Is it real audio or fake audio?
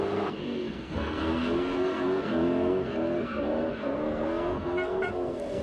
fake